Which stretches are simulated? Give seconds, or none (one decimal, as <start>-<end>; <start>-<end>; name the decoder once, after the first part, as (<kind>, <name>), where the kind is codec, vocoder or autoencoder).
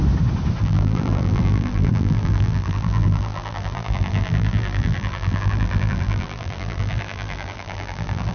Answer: 0.6-8.3 (vocoder, BigVGAN v2)